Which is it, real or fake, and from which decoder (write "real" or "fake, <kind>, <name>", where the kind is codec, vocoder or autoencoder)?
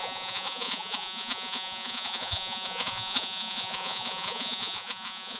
fake, vocoder, Vocos